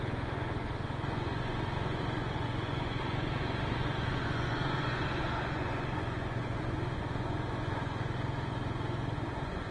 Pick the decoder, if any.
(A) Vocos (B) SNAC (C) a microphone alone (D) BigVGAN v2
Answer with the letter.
A